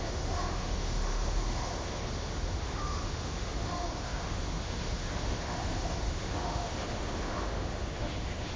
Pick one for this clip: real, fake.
fake